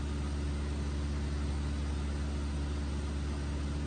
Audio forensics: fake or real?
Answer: real